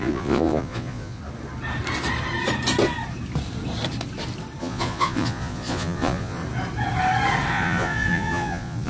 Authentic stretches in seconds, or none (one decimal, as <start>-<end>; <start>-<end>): 1.2-4.6; 6.4-7.5